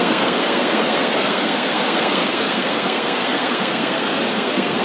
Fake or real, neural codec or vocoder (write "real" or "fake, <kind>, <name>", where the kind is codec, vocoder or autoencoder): fake, codec, SNAC